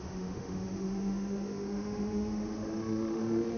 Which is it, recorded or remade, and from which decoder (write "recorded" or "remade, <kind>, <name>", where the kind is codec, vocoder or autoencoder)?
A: remade, autoencoder, DAC-VAE